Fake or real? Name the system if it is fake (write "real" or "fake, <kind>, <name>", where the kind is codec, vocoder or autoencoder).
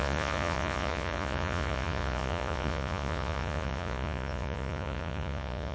fake, vocoder, Vocos